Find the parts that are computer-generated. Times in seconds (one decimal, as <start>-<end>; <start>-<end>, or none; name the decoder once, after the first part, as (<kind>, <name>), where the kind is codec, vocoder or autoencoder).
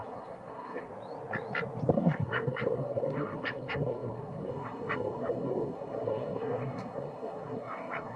0.0-0.9 (codec, SNAC); 1.9-8.2